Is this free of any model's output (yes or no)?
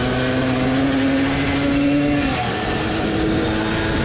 yes